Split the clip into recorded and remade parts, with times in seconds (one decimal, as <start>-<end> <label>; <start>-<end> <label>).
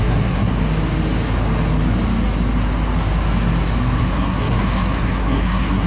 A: 0.0-0.5 remade; 0.5-4.0 recorded; 4.0-5.9 remade